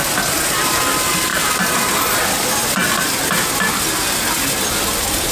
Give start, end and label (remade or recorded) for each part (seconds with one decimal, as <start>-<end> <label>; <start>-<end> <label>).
0.0-5.3 recorded